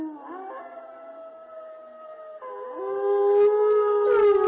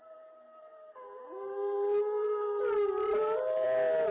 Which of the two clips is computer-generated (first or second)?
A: second